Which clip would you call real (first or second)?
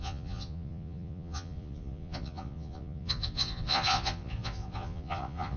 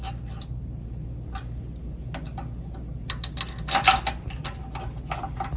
second